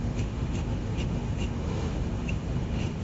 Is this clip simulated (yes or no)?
yes